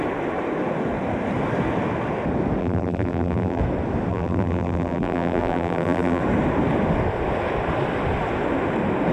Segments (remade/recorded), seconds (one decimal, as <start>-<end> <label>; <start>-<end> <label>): 0.0-2.6 recorded; 2.6-3.6 remade; 3.6-4.1 recorded; 4.1-6.2 remade; 6.2-9.1 recorded